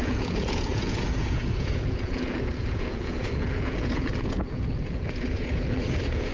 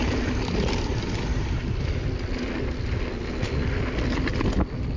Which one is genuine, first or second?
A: second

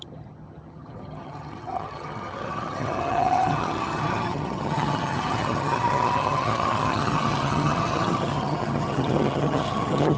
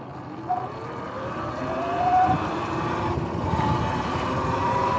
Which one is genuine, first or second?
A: second